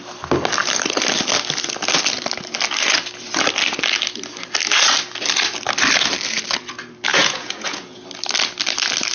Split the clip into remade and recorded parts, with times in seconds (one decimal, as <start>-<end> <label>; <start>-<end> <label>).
0.0-7.1 recorded; 7.1-8.0 remade; 8.0-9.1 recorded